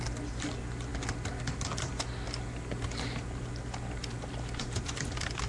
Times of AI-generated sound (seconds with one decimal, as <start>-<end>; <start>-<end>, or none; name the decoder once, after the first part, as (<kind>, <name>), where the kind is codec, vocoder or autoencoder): none